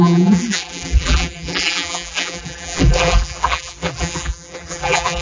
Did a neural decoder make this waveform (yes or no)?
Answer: yes